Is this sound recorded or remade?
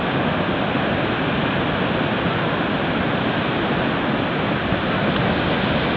recorded